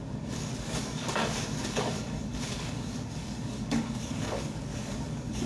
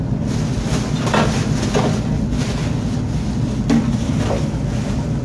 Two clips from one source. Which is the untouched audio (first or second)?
second